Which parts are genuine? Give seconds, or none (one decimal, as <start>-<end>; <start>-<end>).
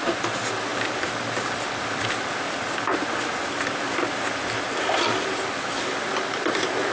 0.0-6.9